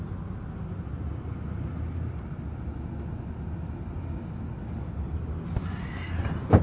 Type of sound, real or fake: real